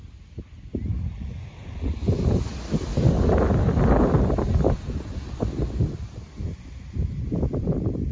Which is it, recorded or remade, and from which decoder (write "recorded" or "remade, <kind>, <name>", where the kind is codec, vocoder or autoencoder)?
recorded